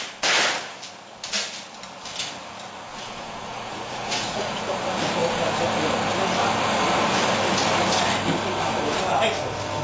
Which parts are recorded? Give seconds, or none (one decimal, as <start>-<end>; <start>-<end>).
0.0-2.9; 4.6-9.8

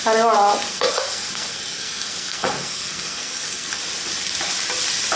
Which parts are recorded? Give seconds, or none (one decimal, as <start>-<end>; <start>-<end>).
0.0-0.7; 3.8-5.2